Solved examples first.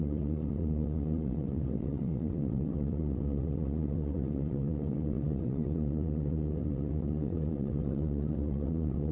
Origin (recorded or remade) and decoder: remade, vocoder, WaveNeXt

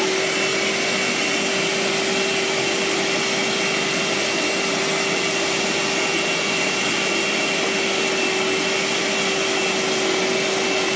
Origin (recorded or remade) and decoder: recorded